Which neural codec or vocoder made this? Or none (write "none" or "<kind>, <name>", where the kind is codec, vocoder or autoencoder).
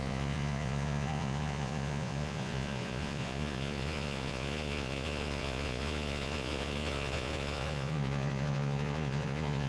vocoder, Vocos